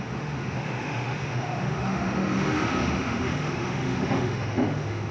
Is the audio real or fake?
fake